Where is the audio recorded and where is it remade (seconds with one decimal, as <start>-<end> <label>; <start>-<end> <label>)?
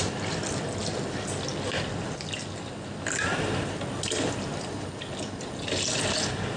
0.0-6.6 recorded